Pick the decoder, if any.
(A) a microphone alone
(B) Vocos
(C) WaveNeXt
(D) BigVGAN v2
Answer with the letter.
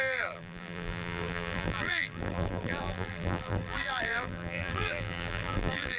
D